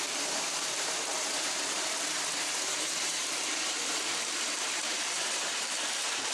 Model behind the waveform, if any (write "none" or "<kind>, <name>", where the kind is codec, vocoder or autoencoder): vocoder, BigVGAN v2